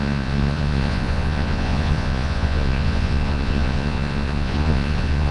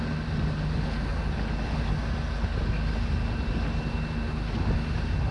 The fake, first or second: first